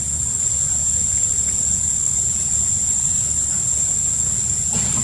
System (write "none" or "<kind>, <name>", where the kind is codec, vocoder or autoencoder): none